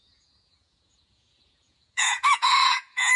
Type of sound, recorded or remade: remade